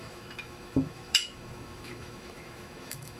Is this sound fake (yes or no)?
yes